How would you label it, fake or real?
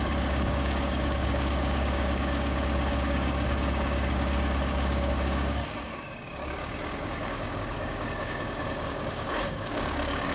fake